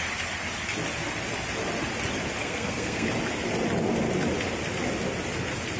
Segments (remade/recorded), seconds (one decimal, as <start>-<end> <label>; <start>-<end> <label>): 0.0-2.4 recorded; 2.4-3.1 remade; 3.1-5.8 recorded